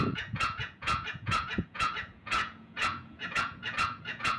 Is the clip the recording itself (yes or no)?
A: no